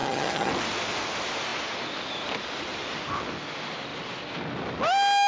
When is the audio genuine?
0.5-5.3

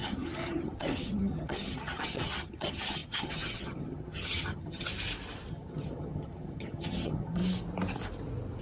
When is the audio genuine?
4.9-5.5; 7.4-8.6

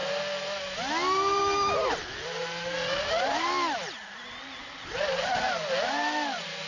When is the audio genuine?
0.0-6.7